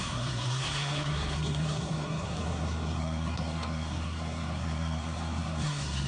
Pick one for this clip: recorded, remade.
remade